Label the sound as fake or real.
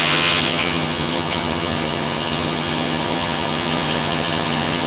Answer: fake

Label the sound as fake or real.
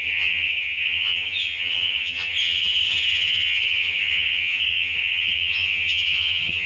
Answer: fake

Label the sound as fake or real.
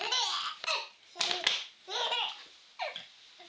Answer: real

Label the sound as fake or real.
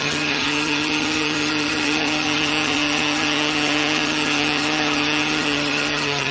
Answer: fake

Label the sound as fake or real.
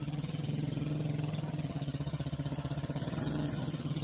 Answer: fake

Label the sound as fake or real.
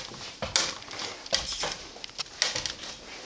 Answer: real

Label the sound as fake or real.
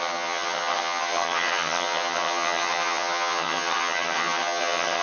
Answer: fake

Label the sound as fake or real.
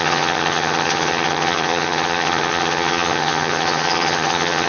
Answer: fake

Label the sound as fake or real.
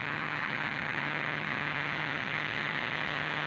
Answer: fake